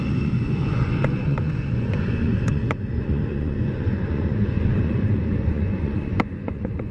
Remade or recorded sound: remade